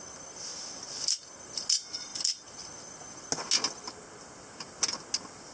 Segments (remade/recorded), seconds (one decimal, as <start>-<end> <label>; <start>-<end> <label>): 0.0-5.5 recorded